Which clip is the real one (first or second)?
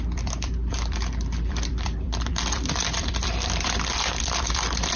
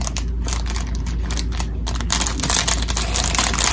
second